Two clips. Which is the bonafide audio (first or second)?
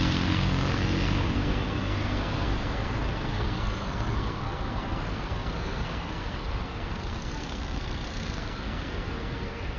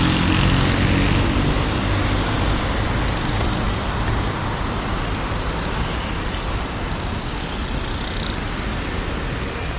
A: second